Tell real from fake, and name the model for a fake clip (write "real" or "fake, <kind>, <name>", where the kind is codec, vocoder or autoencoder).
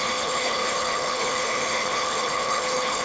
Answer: fake, codec, HILCodec